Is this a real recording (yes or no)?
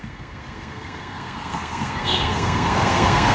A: no